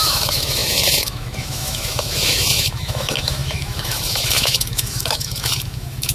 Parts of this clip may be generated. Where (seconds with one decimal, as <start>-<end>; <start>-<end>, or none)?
0.0-6.1